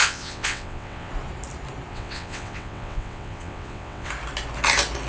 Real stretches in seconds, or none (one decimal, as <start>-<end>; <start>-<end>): 1.1-1.9; 4.1-5.1